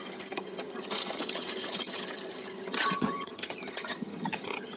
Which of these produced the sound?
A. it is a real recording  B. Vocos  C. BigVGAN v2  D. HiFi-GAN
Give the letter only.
D